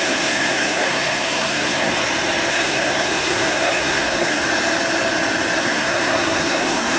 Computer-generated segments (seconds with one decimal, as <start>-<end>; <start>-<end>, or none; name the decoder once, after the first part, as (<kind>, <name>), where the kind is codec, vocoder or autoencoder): 0.0-1.9 (codec, SNAC); 2.5-4.4; 5.6-7.0